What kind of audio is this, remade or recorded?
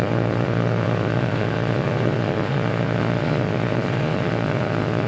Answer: remade